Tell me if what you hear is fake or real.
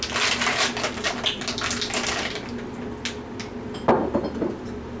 real